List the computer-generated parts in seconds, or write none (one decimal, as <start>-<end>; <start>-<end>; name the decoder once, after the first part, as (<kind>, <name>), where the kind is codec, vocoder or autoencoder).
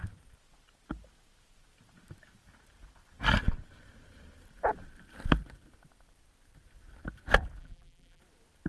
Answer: 7.6-8.2 (vocoder, BigVGAN v2)